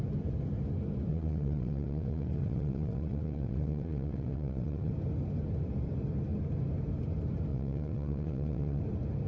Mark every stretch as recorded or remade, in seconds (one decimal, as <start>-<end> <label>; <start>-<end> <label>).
0.0-1.1 recorded; 1.1-4.9 remade; 4.9-7.5 recorded; 7.5-8.8 remade; 8.8-9.3 recorded